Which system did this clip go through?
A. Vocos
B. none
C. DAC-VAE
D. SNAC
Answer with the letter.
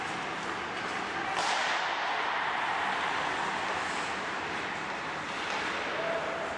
B